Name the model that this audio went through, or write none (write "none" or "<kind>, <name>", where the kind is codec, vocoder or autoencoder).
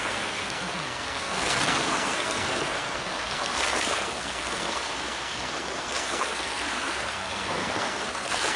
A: codec, SNAC